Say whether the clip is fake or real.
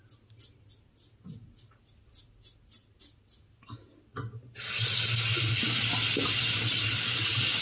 real